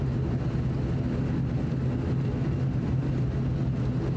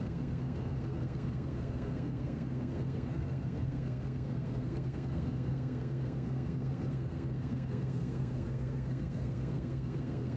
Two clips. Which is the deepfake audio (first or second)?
second